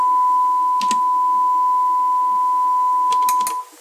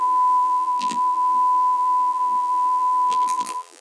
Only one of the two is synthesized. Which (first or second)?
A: second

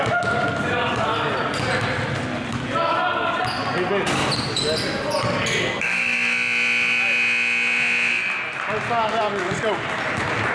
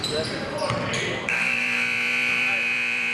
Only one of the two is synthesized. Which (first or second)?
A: second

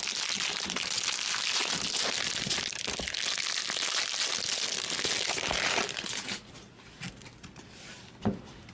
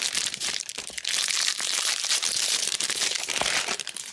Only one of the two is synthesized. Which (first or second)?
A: second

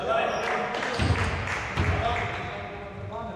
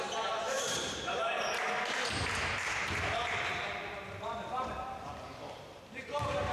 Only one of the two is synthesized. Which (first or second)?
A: second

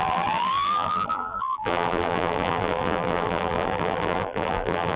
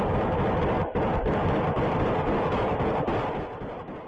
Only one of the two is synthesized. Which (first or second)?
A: first